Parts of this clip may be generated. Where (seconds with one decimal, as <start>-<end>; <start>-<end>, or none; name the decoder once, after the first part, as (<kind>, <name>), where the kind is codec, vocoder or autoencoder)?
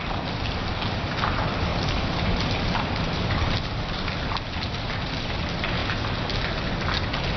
1.7-5.1 (vocoder, BigVGAN v2)